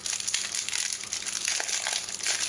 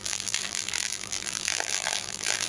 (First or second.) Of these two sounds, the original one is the first